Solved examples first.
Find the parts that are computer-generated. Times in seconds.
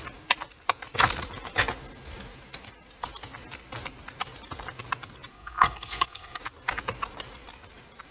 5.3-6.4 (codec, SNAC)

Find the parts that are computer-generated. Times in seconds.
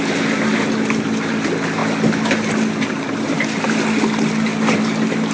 none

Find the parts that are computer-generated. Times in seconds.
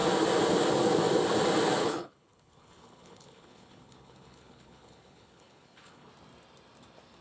1.8-6.1 (codec, HILCodec)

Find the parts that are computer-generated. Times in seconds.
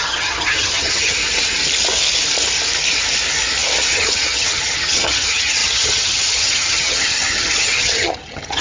0.0-1.2 (vocoder, HiFi-GAN); 3.9-8.6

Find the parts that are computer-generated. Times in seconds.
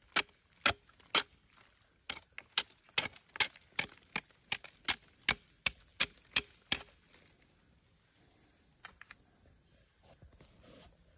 none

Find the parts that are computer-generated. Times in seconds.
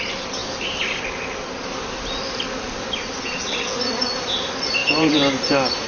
4.8-5.3 (vocoder, BigVGAN v2)